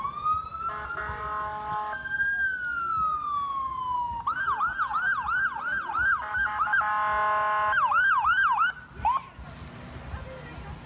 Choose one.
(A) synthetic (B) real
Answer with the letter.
B